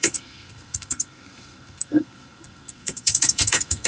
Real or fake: fake